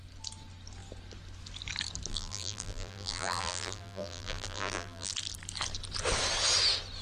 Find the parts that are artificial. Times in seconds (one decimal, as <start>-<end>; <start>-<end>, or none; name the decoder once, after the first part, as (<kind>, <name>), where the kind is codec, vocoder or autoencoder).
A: 2.1-5.1 (vocoder, BigVGAN v2)